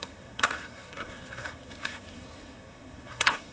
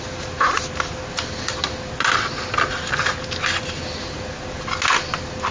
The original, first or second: second